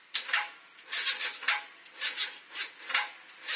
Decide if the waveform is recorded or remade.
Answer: recorded